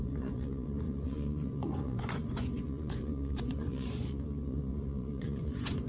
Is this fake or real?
fake